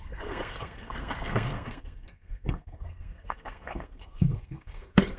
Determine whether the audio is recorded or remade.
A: remade